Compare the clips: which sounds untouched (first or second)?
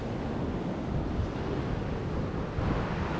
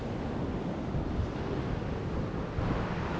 first